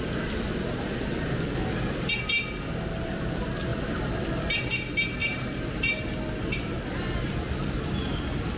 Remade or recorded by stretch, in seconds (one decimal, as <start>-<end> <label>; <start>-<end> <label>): 0.0-3.7 recorded; 3.7-4.3 remade; 4.3-8.6 recorded